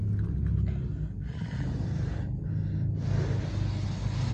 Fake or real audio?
real